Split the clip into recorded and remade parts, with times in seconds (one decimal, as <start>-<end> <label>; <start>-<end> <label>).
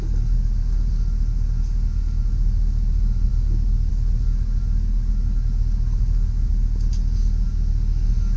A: 0.0-8.4 recorded